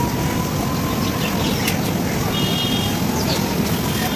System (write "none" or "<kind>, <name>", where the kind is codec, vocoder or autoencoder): none